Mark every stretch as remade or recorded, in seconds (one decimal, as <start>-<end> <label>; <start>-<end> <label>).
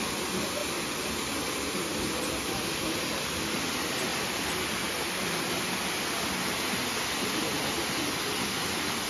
0.0-0.6 remade; 0.6-1.5 recorded; 1.5-4.1 remade; 4.1-8.5 recorded; 8.5-9.1 remade